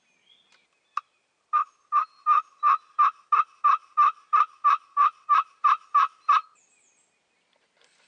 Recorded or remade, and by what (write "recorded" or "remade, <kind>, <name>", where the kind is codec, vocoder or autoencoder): recorded